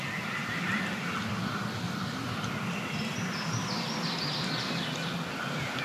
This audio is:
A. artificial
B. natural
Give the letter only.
B